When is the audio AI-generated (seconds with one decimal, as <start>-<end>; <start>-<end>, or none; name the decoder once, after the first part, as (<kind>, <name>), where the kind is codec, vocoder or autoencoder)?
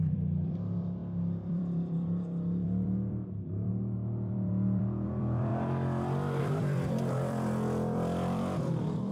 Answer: 0.0-5.5 (vocoder, BigVGAN v2); 6.4-9.1